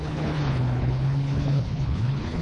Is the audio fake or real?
fake